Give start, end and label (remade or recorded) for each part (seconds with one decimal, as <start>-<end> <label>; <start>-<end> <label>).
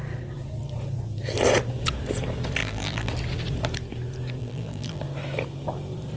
0.0-2.6 recorded; 2.6-3.1 remade; 3.1-4.4 recorded; 4.4-5.0 remade; 5.0-6.2 recorded